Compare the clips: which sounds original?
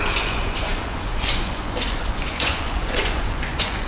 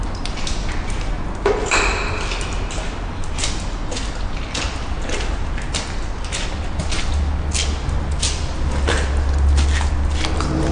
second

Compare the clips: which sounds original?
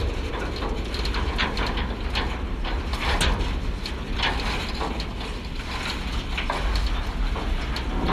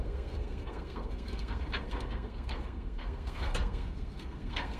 first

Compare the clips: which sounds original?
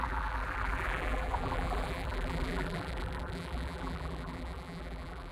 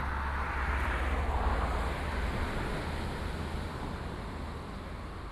second